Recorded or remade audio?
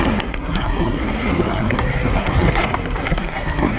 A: remade